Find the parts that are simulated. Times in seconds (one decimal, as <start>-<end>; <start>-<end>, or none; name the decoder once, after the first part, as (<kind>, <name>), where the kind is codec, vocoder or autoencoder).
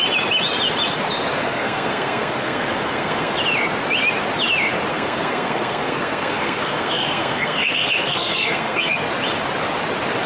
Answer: 1.4-3.3 (codec, SNAC); 4.9-9.1